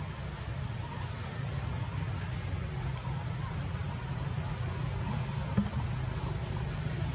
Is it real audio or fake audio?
real